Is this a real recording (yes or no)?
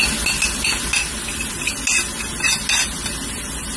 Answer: yes